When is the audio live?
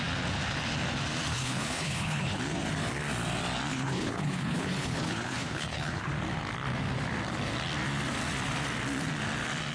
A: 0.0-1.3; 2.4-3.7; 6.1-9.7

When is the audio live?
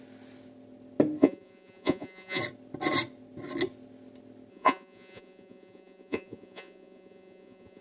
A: 0.0-1.2; 2.4-4.5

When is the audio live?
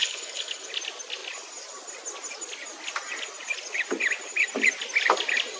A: 0.7-5.6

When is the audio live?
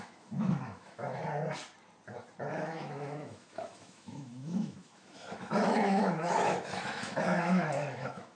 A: 1.2-2.5